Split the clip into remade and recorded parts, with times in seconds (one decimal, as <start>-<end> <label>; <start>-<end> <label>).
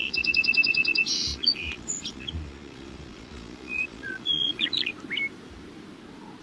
0.0-4.9 remade; 4.9-6.4 recorded